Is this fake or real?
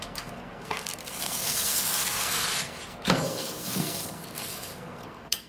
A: fake